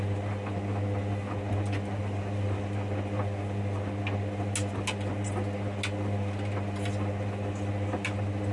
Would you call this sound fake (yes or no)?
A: no